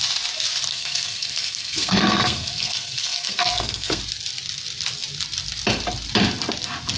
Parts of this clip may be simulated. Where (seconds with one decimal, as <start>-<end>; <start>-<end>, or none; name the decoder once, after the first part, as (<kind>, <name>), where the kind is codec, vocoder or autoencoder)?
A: 0.7-4.0 (codec, SNAC)